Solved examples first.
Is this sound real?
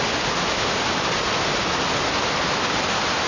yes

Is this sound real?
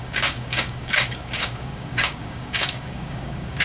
no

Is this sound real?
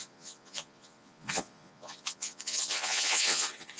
no